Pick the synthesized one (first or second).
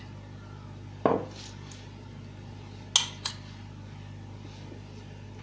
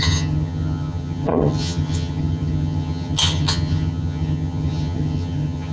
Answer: second